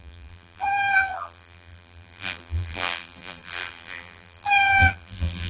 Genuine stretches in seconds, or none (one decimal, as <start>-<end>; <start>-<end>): none